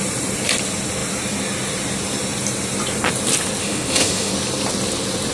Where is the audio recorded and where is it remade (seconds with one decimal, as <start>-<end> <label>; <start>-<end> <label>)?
0.0-3.6 recorded; 3.6-4.3 remade; 4.3-5.3 recorded